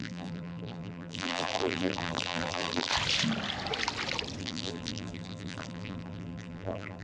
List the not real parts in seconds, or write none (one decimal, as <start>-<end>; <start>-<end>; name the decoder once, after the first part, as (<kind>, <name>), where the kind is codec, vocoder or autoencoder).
0.0-2.9 (vocoder, BigVGAN v2); 4.4-7.0